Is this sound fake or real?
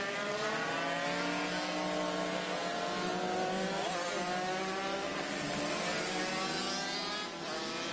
real